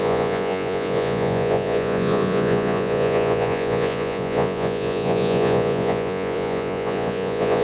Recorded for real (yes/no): no